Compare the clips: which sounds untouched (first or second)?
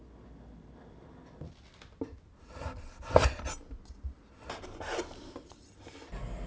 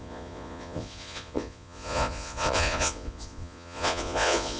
first